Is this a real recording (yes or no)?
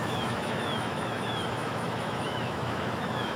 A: no